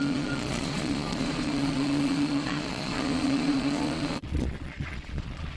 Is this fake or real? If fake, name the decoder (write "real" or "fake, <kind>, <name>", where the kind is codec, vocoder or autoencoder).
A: fake, vocoder, Vocos